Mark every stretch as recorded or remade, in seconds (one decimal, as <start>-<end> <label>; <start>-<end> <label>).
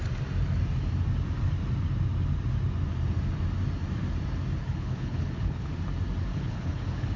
0.0-4.6 recorded; 4.6-5.7 remade; 5.7-6.3 recorded; 6.3-7.2 remade